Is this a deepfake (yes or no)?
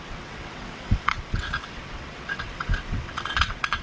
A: yes